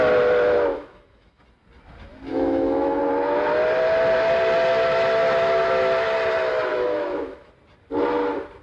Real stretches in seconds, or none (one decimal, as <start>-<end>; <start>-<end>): 0.0-0.7; 1.4-2.3; 3.0-6.7; 7.5-8.6